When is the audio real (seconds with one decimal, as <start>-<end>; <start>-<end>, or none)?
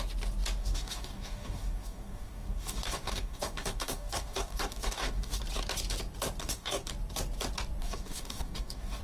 0.0-0.6; 5.4-6.4; 6.9-7.8